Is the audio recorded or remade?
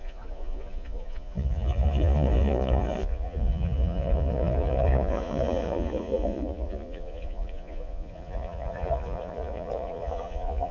remade